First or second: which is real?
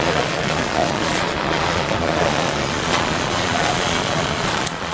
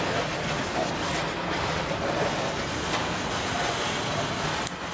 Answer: second